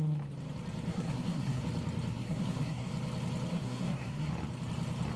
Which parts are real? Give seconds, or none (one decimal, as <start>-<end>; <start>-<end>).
0.0-0.9; 1.6-2.1; 2.9-3.5; 4.3-5.2